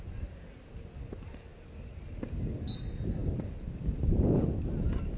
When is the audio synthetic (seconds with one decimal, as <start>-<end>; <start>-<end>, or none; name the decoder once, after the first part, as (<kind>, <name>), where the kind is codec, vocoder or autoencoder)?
none